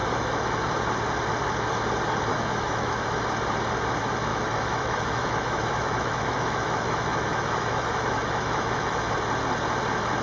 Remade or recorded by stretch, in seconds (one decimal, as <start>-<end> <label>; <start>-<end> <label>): 0.0-0.6 remade; 0.6-2.3 recorded; 2.3-3.2 remade; 3.2-4.3 recorded; 4.3-9.1 remade; 9.1-10.2 recorded